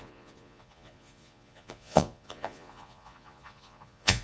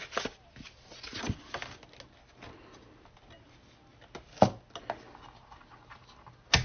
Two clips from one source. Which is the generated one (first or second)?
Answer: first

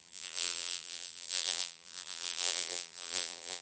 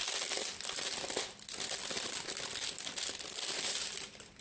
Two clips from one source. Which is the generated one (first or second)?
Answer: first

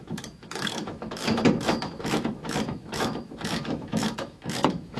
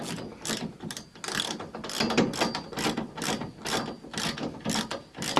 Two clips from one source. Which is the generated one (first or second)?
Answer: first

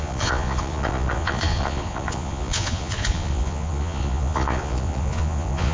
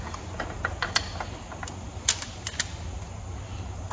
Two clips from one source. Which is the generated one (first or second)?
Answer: first